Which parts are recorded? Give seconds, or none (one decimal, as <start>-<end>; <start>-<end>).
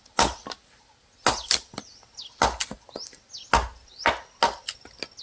0.0-5.2